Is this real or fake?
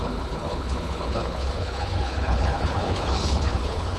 fake